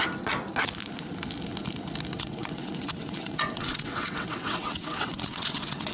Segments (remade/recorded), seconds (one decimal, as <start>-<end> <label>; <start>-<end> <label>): 0.0-2.1 recorded; 2.1-5.9 remade